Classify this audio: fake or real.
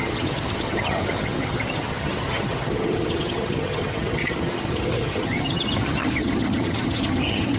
fake